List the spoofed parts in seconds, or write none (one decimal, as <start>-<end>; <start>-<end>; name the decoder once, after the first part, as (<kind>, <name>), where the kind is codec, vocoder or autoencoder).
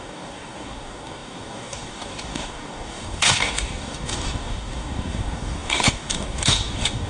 0.0-7.1 (codec, DAC)